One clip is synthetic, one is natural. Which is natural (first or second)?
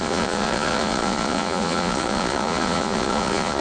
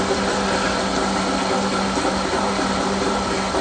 second